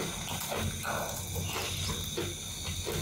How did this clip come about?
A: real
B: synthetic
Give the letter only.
A